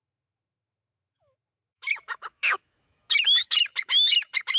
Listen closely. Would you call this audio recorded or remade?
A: remade